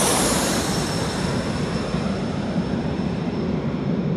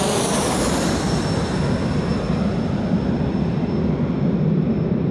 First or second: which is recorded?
second